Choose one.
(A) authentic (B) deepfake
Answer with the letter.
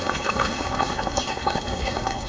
B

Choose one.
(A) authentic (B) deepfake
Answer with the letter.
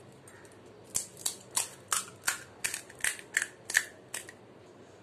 A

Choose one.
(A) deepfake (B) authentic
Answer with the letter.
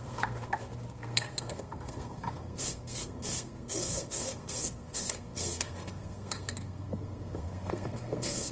A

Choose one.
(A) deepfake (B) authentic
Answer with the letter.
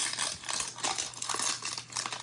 B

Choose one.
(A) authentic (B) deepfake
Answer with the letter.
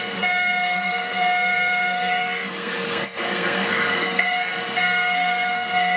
B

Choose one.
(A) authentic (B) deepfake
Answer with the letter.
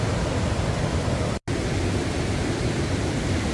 A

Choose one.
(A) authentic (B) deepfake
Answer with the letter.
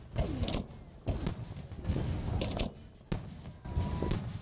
A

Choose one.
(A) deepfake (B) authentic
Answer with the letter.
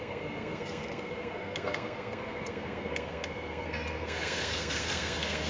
A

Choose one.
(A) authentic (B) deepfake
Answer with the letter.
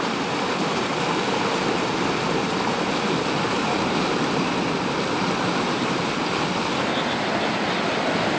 A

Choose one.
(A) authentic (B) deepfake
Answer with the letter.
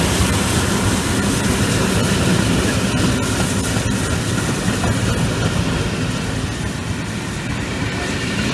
A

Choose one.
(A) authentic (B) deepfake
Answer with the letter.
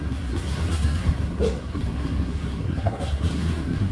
B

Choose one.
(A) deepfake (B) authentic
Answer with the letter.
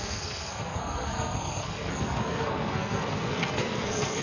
A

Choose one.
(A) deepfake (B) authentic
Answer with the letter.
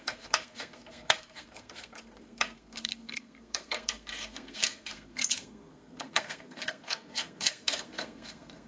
A